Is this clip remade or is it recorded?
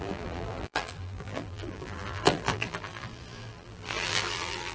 remade